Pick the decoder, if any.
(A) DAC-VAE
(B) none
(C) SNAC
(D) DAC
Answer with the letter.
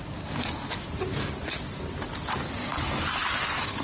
B